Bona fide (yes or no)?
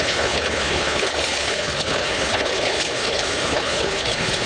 no